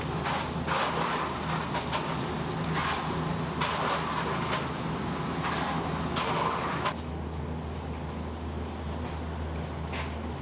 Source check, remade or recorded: recorded